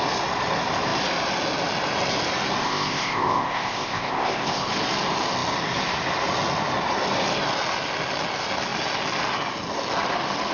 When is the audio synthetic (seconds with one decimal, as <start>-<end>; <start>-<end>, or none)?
2.6-4.7

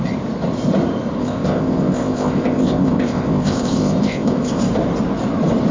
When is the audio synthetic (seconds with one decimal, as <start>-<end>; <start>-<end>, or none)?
1.2-4.6

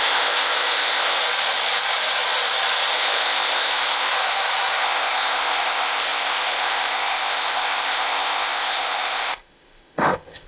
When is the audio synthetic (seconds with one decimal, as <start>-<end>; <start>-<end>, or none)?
0.0-1.2; 2.9-4.1; 4.8-10.5